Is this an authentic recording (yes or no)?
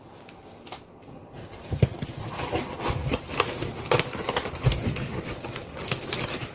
yes